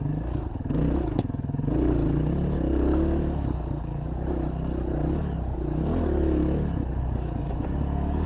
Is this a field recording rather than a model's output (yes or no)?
yes